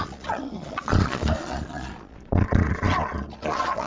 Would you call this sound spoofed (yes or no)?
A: yes